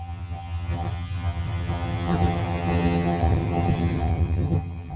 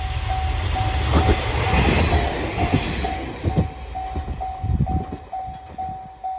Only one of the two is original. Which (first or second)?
second